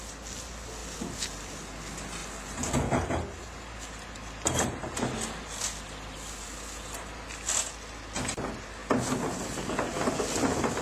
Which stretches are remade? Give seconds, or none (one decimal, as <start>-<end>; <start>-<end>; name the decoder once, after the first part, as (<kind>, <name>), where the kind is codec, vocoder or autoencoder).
none